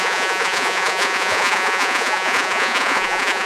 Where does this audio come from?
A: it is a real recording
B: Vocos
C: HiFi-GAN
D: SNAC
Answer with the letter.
B